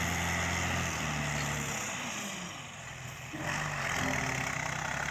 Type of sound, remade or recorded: recorded